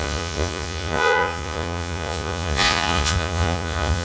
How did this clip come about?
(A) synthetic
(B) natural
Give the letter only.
A